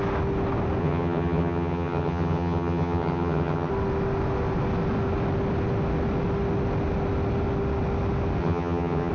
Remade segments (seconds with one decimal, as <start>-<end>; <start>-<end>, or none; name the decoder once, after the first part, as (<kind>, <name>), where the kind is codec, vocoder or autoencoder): 0.8-3.7 (vocoder, HiFi-GAN); 8.4-9.1